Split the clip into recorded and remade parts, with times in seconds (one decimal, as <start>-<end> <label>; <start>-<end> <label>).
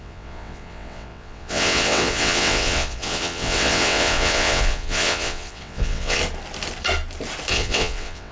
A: 0.0-6.2 remade; 6.2-7.5 recorded; 7.5-8.3 remade